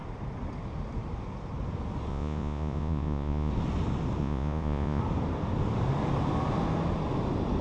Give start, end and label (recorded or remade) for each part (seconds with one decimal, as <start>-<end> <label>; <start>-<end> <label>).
0.0-2.1 recorded; 2.1-3.5 remade; 3.5-4.2 recorded; 4.2-5.0 remade; 5.0-7.6 recorded